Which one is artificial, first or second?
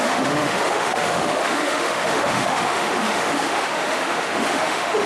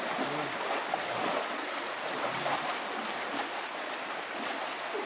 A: first